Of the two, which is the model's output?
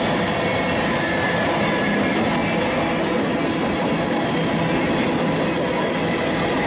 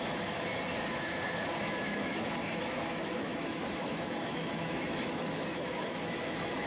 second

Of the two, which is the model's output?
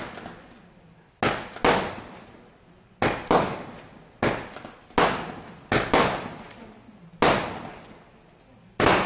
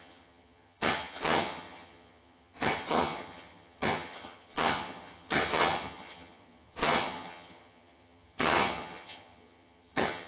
second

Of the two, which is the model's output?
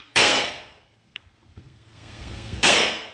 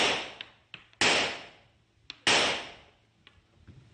first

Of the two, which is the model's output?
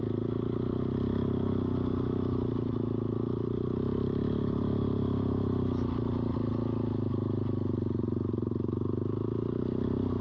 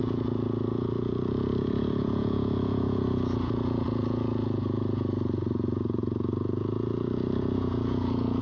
second